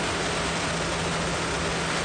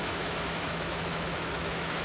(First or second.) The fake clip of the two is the second